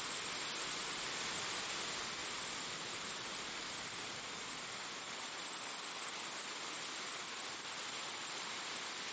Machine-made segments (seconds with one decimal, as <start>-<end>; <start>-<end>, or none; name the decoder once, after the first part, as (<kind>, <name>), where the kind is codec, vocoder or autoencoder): 2.2-6.7 (vocoder, BigVGAN v2); 7.2-8.5